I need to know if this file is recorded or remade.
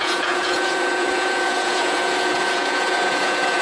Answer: remade